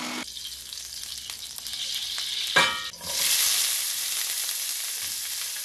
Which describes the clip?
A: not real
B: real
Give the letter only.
B